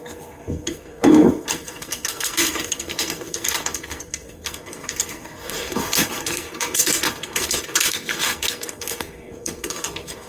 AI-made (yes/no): yes